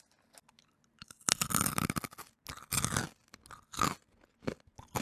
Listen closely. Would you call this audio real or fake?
real